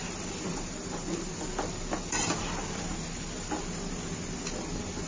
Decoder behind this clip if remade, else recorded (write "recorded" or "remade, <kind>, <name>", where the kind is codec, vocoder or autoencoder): recorded